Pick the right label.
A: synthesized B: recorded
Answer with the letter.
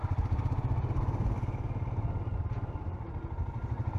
B